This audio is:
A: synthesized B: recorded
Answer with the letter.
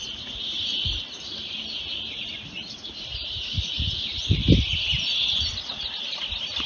B